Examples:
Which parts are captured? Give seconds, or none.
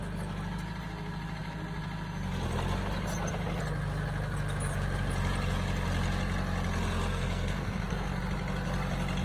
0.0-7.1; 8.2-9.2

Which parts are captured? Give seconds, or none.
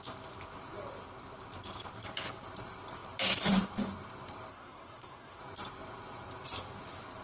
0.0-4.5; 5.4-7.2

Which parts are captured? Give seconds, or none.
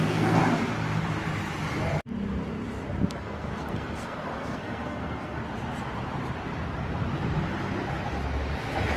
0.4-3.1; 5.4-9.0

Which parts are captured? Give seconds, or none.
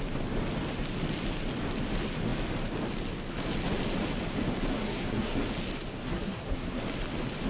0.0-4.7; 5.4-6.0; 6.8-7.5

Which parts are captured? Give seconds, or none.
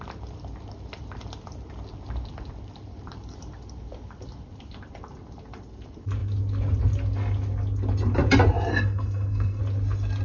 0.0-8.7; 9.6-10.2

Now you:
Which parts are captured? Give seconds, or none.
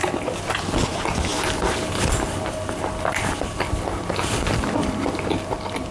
0.0-5.9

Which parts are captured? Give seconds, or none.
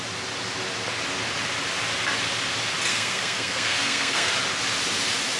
0.0-2.9; 4.3-5.4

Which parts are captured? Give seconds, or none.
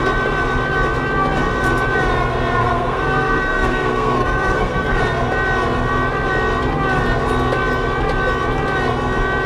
0.0-2.6; 5.0-9.5